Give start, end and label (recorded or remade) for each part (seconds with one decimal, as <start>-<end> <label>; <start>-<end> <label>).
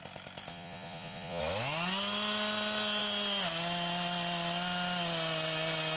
0.0-0.5 recorded; 0.5-1.4 remade; 1.4-6.0 recorded